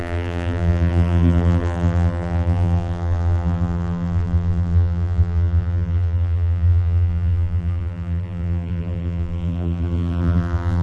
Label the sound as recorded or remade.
remade